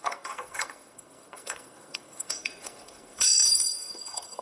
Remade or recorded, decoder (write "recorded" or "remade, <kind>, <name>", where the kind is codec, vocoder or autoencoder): remade, codec, SNAC